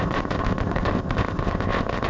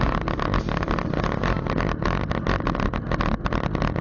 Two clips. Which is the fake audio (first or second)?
first